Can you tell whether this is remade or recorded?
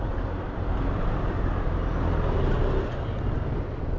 recorded